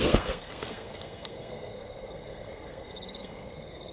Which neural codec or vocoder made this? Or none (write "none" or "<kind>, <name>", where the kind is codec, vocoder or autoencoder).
codec, SNAC